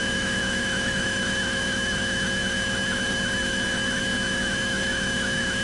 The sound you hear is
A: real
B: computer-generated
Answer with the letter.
B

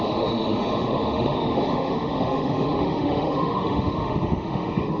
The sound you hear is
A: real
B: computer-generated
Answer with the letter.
B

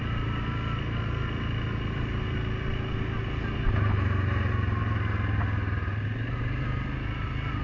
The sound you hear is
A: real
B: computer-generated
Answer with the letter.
A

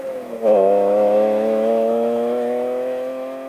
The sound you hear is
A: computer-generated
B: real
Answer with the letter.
A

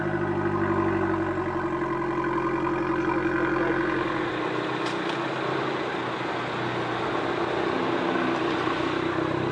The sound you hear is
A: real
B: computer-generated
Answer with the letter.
A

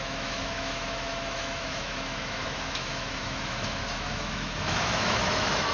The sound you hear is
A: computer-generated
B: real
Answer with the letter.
A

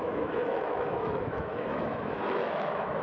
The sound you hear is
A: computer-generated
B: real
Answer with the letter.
A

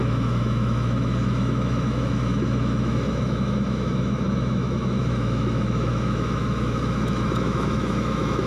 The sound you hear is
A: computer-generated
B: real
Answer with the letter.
A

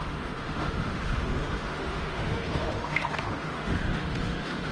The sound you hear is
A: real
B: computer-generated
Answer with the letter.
B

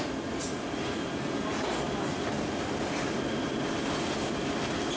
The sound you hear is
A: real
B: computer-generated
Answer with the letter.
A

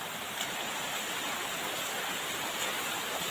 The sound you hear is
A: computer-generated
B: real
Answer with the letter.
B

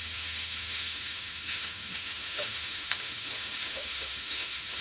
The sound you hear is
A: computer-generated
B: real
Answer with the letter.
A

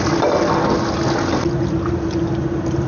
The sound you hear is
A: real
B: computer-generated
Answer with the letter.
A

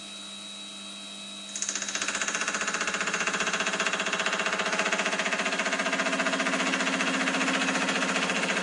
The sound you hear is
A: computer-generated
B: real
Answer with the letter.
B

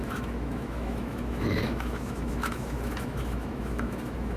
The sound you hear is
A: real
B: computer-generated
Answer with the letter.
B